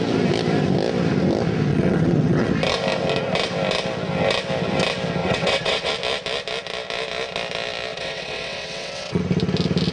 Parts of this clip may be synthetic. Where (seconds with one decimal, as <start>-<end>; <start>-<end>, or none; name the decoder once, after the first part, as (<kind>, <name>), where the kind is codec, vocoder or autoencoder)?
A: 1.7-2.5 (vocoder, WaveNeXt); 5.2-5.9; 7.9-9.2